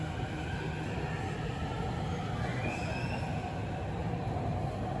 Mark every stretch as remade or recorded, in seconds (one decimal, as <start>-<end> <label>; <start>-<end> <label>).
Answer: 0.0-2.5 recorded; 2.5-3.1 remade; 3.1-5.0 recorded

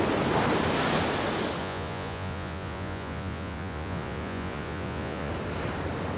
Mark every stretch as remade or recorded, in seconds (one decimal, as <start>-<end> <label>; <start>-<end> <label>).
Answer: 0.0-1.6 recorded; 1.6-5.3 remade; 5.3-6.2 recorded

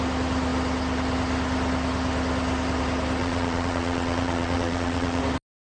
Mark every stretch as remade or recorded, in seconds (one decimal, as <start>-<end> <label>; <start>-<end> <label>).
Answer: 0.0-3.2 recorded; 3.2-5.2 remade; 5.2-5.8 recorded

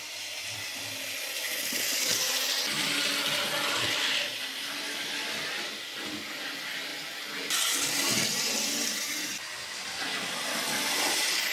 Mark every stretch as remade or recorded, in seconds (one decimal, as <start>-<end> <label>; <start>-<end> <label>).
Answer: 0.0-11.5 recorded